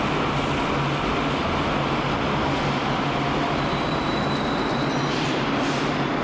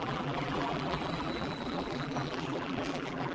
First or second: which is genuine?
first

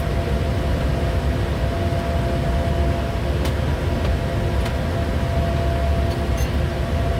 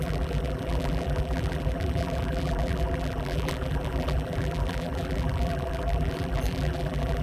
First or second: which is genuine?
first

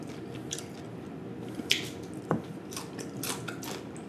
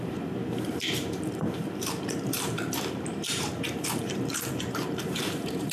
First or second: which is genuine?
first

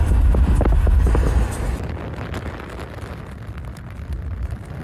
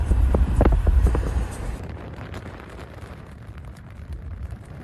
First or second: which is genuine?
first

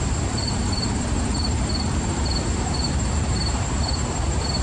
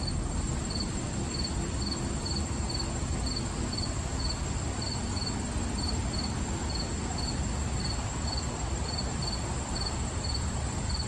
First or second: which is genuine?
second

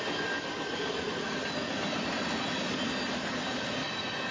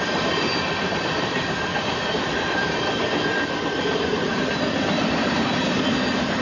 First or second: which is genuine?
first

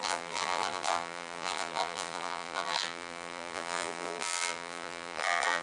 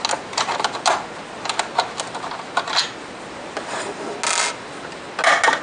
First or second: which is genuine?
second